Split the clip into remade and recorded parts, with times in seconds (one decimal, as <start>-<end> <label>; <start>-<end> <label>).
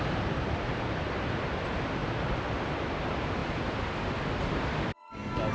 0.0-5.5 recorded